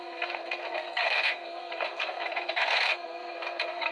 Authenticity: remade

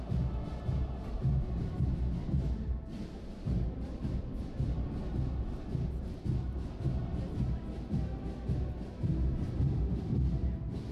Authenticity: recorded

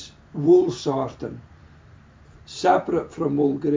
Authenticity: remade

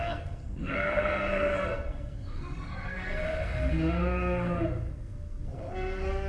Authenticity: remade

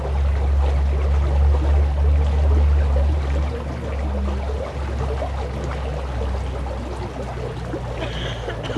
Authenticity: recorded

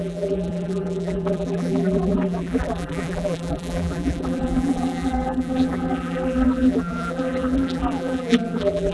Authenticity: remade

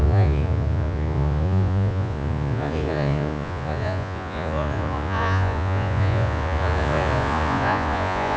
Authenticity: remade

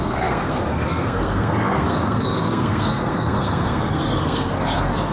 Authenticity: remade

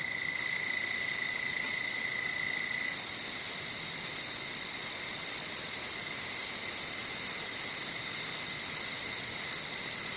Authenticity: recorded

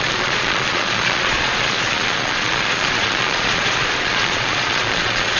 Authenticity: remade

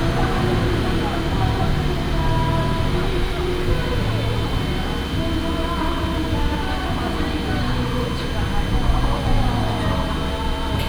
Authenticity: recorded